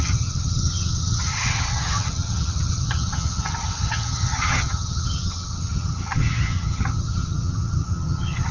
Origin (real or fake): fake